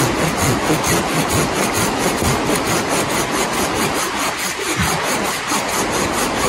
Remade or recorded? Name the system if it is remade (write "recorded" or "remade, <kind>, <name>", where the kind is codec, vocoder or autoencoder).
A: recorded